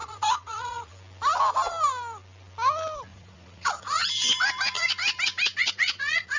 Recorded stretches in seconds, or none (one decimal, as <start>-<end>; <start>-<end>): 0.9-3.1; 4.1-5.6

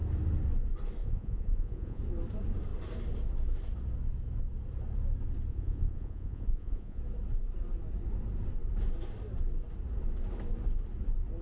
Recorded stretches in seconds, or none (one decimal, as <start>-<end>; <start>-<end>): 0.0-1.0; 2.0-5.5; 7.0-11.4

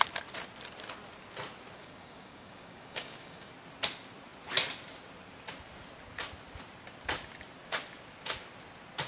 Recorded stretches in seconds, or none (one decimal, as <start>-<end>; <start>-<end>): 0.0-1.8; 3.5-9.1